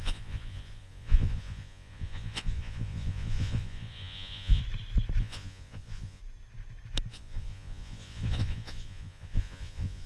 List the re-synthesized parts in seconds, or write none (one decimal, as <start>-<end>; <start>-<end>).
0.0-4.6; 5.2-6.2; 7.1-10.1